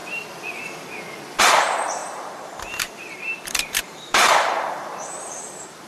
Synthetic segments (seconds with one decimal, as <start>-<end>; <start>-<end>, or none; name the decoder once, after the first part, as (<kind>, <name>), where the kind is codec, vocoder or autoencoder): 1.4-5.9 (vocoder, BigVGAN v2)